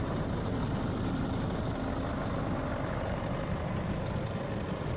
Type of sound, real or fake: real